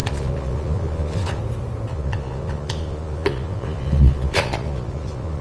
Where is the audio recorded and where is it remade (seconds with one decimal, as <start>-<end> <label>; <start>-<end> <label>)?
0.0-1.4 remade; 1.4-1.9 recorded; 1.9-5.4 remade